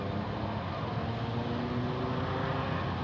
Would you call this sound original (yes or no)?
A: yes